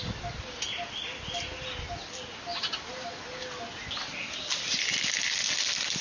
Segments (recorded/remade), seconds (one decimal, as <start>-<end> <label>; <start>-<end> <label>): 0.0-6.0 recorded